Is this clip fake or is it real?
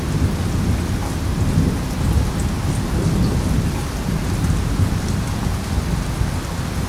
real